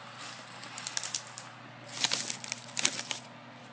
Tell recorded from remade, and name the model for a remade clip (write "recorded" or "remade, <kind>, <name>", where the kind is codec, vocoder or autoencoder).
recorded